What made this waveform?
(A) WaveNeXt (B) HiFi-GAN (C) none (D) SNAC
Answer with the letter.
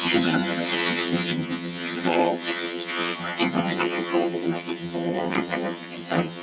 B